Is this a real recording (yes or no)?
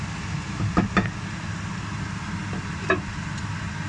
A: yes